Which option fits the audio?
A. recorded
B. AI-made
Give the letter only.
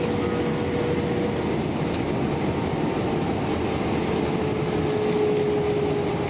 A